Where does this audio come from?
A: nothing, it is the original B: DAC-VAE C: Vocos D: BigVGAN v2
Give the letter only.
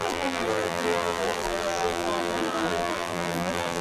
D